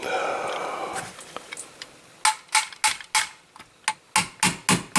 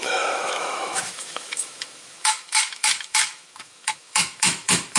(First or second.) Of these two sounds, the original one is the first